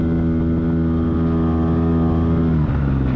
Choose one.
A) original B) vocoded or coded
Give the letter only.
A